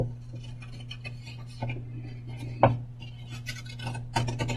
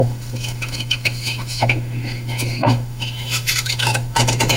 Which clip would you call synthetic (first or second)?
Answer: second